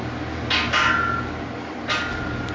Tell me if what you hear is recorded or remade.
recorded